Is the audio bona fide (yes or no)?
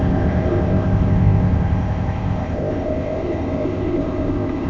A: no